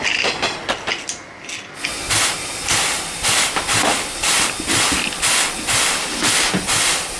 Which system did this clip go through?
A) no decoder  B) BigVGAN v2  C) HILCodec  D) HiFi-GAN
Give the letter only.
A